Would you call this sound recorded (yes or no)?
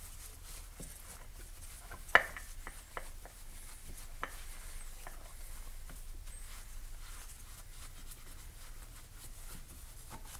yes